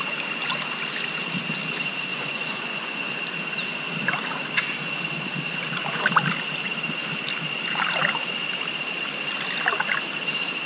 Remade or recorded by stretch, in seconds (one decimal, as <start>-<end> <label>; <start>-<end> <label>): 0.0-2.1 recorded; 2.1-3.1 remade; 3.1-10.7 recorded